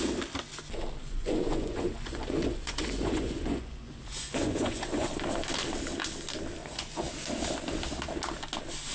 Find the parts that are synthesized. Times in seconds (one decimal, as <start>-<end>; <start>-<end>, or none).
1.0-5.1; 6.6-7.1